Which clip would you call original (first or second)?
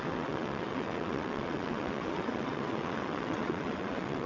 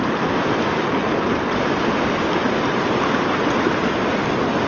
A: second